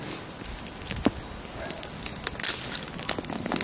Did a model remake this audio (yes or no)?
no